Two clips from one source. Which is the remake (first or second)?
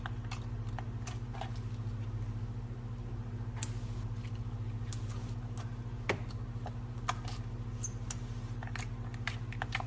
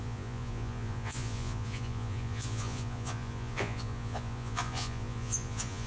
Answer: second